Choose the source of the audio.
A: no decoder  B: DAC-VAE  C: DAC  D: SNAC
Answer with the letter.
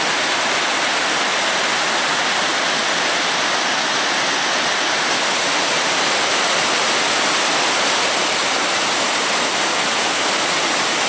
A